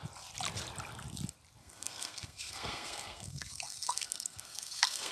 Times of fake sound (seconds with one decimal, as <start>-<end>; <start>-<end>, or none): 1.6-5.1